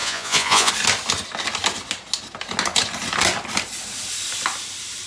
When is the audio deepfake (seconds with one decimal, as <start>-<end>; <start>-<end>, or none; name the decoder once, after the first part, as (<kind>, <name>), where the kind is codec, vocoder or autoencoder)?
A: 0.0-0.7 (vocoder, Vocos)